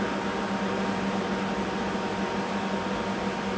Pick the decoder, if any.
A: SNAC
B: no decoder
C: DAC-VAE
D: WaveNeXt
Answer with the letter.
B